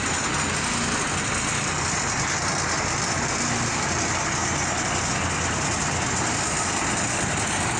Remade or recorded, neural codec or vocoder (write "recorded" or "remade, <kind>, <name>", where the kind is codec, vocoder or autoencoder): recorded